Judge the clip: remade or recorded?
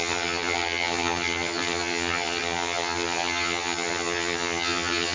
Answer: remade